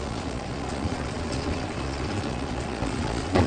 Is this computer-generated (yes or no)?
yes